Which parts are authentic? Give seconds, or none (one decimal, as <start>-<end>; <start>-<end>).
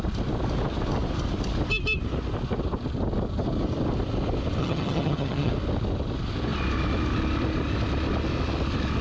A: 0.0-4.6; 5.5-9.0